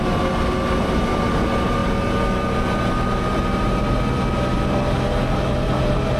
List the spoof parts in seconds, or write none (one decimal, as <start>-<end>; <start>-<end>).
none